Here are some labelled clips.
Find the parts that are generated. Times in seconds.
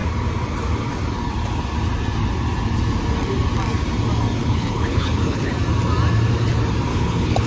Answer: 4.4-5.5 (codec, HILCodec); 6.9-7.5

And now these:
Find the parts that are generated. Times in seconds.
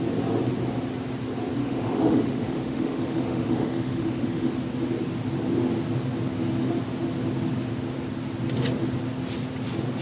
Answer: 1.6-4.5 (autoencoder, DAC-VAE)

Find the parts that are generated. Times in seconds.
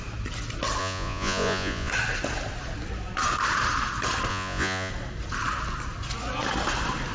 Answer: 0.8-1.9 (vocoder, Vocos); 4.3-4.9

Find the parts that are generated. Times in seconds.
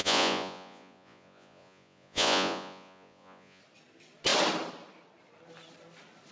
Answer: 0.0-3.6 (vocoder, Vocos)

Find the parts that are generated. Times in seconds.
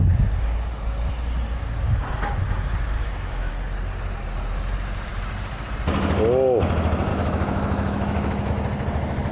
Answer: 3.0-3.5 (autoencoder, DAC-VAE); 7.1-8.5